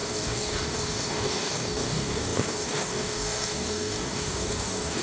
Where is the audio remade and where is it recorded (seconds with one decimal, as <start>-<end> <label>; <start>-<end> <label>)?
0.0-5.0 remade